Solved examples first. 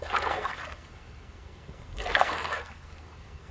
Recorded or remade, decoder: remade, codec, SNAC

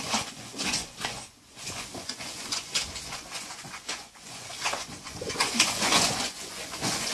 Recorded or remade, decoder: remade, vocoder, Vocos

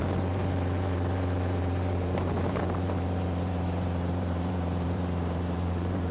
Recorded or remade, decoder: remade, vocoder, BigVGAN v2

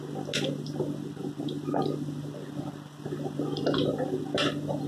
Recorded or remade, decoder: recorded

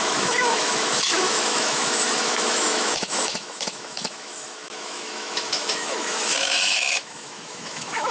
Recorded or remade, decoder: remade, autoencoder, DAC-VAE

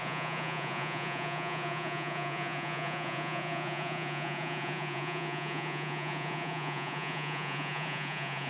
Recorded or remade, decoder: remade, vocoder, Vocos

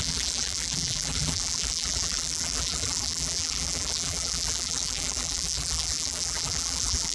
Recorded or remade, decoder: remade, vocoder, BigVGAN v2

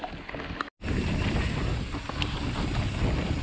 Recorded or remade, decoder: recorded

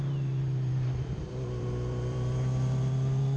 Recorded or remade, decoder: remade, vocoder, BigVGAN v2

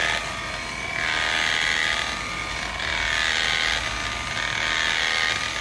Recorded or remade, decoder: recorded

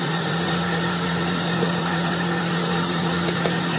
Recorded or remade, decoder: remade, vocoder, Vocos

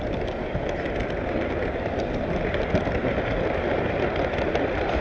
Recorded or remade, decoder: recorded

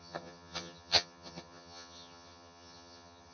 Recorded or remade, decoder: remade, vocoder, HiFi-GAN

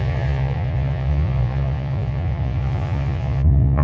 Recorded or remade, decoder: remade, vocoder, Vocos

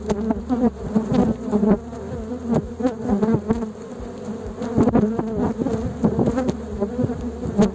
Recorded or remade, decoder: recorded